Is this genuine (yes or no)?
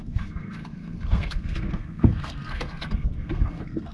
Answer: no